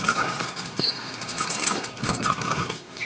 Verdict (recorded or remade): remade